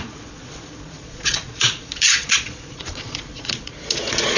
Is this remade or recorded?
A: remade